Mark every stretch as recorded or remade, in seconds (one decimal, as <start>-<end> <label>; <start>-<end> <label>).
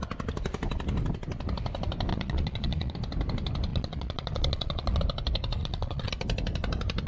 0.0-2.1 recorded; 2.1-2.9 remade; 2.9-3.7 recorded; 3.7-5.0 remade; 5.0-5.6 recorded; 5.6-6.1 remade; 6.1-7.1 recorded